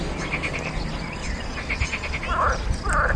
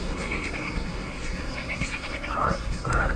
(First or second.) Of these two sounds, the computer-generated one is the second